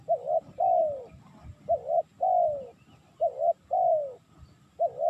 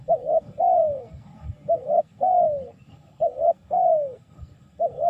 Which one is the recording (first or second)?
first